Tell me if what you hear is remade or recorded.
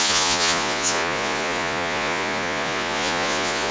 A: remade